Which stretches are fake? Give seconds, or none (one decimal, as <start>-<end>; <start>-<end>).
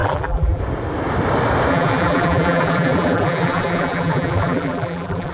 0.0-0.6; 1.7-5.3